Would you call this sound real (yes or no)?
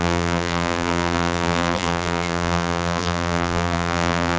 no